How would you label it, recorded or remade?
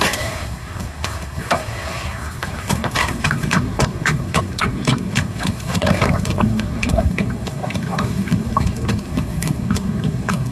remade